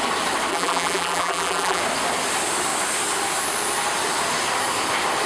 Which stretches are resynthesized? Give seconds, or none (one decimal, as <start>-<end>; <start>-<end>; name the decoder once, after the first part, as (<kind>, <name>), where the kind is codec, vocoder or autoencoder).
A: 0.5-1.8 (vocoder, BigVGAN v2)